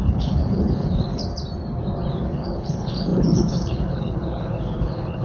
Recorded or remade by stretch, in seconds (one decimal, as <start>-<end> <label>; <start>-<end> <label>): 0.0-1.2 remade; 1.2-2.1 recorded; 2.1-5.2 remade